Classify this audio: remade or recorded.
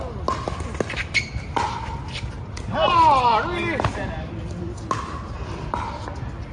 recorded